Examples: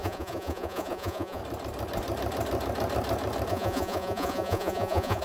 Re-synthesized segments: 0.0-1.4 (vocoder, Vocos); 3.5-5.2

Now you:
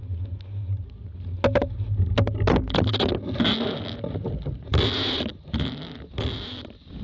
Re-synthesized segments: none

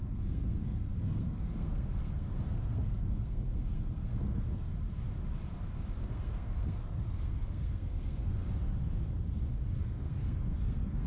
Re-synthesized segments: 0.0-4.7 (codec, SNAC); 6.0-8.4; 9.8-11.1